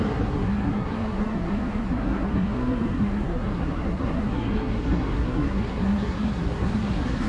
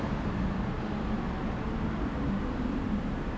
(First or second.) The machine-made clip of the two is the first